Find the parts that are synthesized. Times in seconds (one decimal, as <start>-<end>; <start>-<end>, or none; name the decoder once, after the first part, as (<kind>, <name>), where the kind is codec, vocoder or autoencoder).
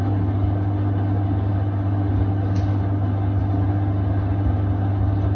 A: none